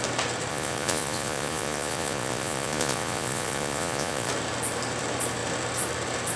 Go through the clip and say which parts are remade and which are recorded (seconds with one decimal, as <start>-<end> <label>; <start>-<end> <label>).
0.0-0.5 recorded; 0.5-4.3 remade; 4.3-6.4 recorded